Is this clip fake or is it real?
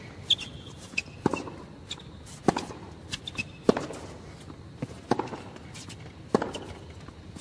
real